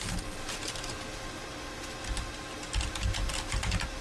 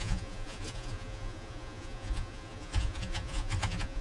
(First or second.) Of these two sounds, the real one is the first